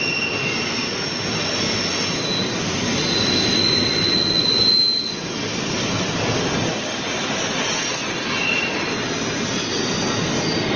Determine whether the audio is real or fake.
real